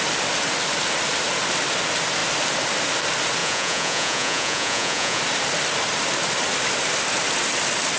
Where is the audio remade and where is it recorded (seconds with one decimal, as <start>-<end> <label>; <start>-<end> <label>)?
0.0-3.4 recorded; 3.4-5.2 remade; 5.2-8.0 recorded